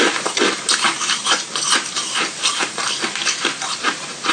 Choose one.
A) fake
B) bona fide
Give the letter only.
A